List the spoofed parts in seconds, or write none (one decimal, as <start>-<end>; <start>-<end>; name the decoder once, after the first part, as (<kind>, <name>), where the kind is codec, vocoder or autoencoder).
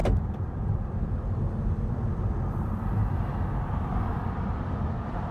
0.0-3.0 (vocoder, BigVGAN v2); 3.6-5.3